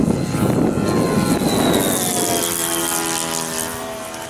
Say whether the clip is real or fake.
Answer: real